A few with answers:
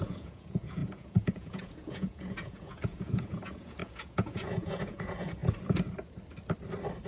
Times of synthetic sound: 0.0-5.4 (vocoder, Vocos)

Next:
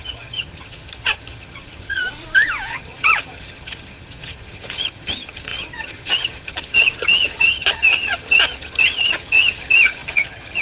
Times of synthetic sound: 0.0-2.0 (vocoder, HiFi-GAN); 2.7-10.6

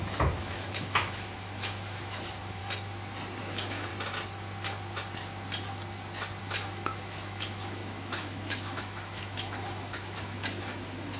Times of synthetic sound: 0.0-2.6 (autoencoder, DAC-VAE); 3.4-3.9; 6.4-11.2